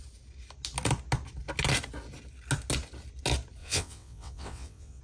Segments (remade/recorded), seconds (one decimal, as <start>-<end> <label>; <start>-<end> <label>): 0.0-3.6 recorded; 3.6-5.0 remade